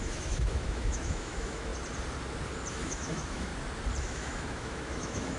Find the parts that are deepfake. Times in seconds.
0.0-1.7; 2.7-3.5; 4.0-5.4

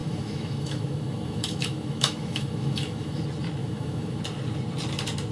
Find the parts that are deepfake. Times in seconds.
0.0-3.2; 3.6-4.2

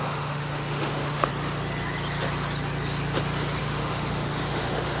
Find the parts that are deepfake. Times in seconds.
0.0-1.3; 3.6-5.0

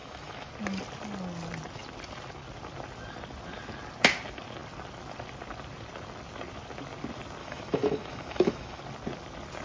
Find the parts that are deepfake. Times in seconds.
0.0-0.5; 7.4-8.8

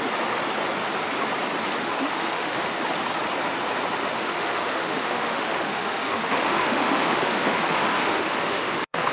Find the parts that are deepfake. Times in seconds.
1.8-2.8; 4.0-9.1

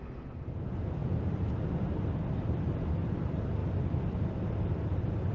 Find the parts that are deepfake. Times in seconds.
none

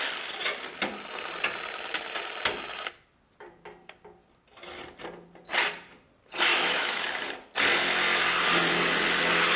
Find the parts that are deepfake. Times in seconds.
6.5-7.0